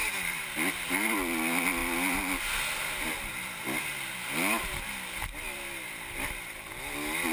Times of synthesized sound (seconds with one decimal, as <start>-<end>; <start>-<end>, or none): 0.0-0.5